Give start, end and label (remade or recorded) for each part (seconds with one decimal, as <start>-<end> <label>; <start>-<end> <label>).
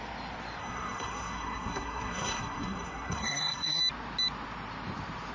0.0-0.6 recorded; 0.6-3.8 remade; 3.8-5.3 recorded